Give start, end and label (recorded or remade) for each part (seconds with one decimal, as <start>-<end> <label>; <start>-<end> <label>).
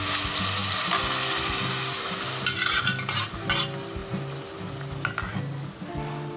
0.0-6.4 recorded